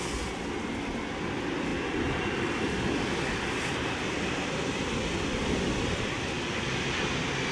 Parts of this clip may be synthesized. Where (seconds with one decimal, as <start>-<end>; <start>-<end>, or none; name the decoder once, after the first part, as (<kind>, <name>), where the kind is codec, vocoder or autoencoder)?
none